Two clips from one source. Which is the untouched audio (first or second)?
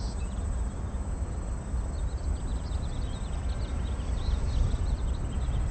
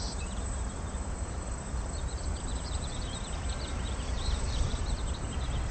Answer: first